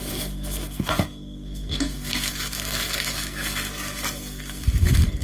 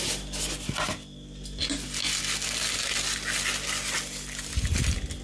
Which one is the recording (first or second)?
second